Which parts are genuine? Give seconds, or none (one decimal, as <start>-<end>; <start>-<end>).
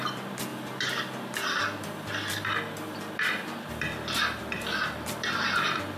0.0-6.0